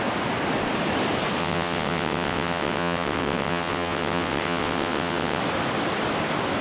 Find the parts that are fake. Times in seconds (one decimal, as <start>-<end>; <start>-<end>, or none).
1.4-5.4